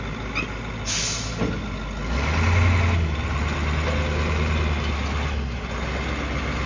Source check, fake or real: real